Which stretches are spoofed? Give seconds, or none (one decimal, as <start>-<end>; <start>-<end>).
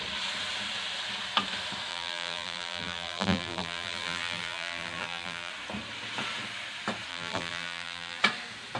1.9-5.5; 7.1-8.2